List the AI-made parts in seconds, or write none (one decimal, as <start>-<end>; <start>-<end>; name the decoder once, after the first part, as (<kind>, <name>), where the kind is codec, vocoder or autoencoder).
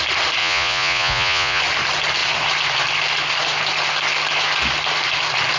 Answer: 0.4-1.6 (vocoder, Vocos)